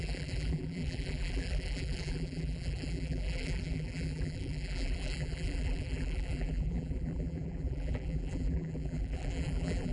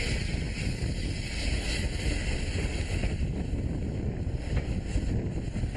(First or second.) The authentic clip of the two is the second